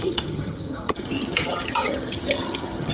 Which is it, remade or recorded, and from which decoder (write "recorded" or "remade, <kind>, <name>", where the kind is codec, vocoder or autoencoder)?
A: remade, vocoder, HiFi-GAN